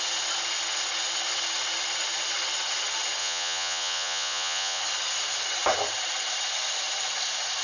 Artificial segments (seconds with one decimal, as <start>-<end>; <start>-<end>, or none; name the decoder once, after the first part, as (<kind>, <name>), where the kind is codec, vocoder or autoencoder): 3.2-4.8 (vocoder, Vocos)